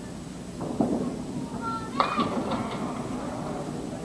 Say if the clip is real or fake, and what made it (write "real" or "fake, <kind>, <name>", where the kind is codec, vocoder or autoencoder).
real